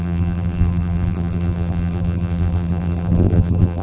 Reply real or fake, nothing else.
fake